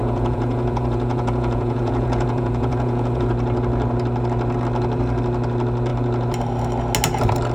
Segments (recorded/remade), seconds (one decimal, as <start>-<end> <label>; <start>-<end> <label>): 0.0-3.3 remade; 3.3-7.5 recorded